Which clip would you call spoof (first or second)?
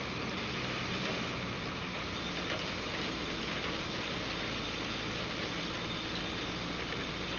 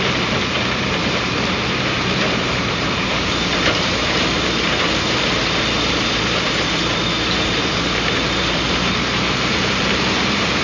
second